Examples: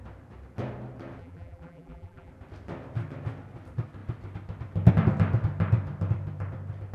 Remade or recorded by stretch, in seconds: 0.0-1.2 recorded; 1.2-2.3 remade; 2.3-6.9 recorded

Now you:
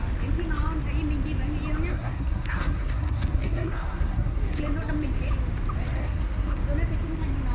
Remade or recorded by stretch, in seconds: 0.0-1.9 recorded; 1.9-4.6 remade; 4.6-6.0 recorded; 6.0-6.6 remade; 6.6-7.5 recorded

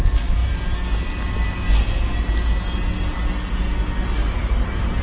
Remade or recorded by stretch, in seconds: 0.0-5.0 recorded

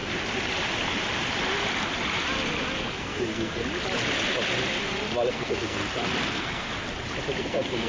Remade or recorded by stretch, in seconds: 0.0-3.0 recorded; 3.0-3.6 remade; 3.6-5.3 recorded; 5.3-5.8 remade; 5.8-6.3 recorded; 6.3-6.7 remade; 6.7-7.4 recorded; 7.4-7.9 remade

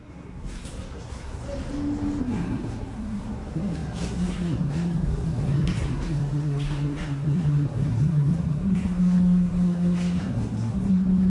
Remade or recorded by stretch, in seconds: 0.0-1.4 remade; 1.4-2.2 recorded; 2.2-11.3 remade